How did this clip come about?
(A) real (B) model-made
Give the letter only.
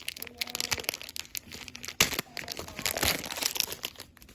A